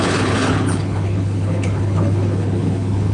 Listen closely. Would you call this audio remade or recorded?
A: remade